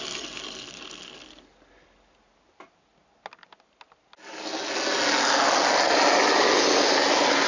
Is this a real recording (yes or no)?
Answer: yes